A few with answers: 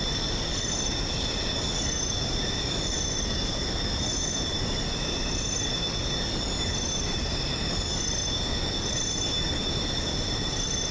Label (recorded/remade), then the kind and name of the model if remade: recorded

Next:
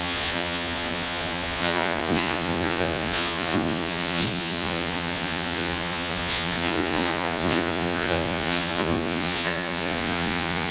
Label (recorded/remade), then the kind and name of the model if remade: remade, vocoder, Vocos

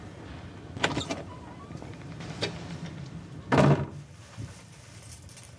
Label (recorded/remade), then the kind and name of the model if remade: recorded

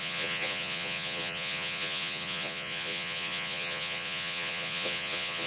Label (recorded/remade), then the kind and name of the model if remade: remade, vocoder, Vocos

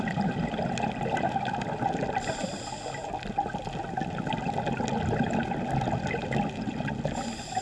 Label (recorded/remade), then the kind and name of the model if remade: recorded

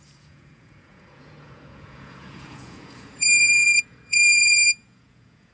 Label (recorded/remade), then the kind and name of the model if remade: remade, vocoder, Vocos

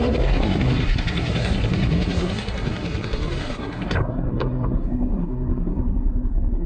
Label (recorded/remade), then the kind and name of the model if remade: remade, codec, SNAC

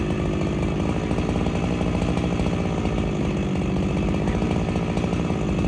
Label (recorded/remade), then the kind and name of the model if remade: recorded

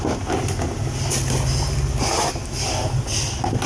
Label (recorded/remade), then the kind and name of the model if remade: recorded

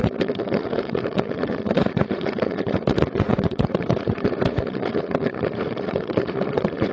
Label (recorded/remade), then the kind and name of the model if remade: remade, vocoder, Vocos